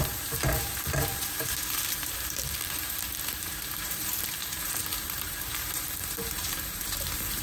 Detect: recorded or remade remade